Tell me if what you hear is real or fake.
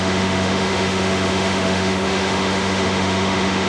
fake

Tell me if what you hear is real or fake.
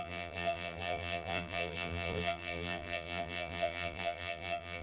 fake